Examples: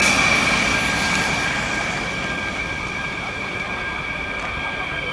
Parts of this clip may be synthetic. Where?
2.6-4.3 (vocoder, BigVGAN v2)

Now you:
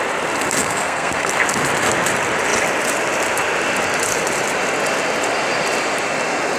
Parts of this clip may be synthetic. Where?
0.6-1.3 (codec, SNAC)

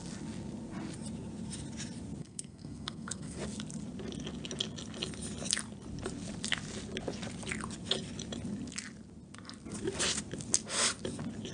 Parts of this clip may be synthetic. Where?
2.2-3.4 (codec, SNAC)

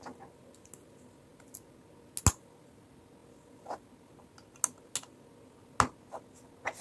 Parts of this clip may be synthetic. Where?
none

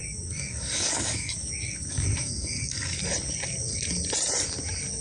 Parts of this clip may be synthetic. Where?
0.0-3.0 (codec, DAC)

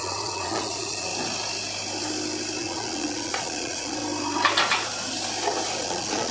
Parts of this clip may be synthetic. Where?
0.0-1.1 (vocoder, Vocos); 2.6-4.0; 5.8-6.3

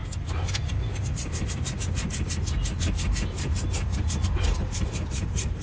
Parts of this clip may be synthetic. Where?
0.7-1.2 (vocoder, BigVGAN v2); 4.6-5.6